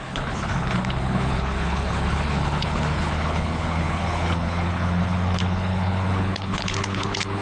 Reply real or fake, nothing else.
fake